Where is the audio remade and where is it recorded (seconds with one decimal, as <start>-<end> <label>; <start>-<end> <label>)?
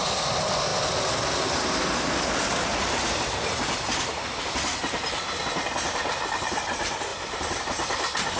0.0-8.4 recorded